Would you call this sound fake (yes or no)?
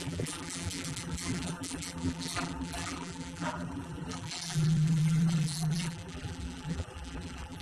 yes